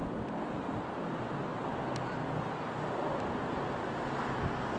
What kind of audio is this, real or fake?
real